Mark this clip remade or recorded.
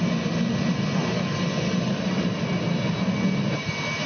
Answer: recorded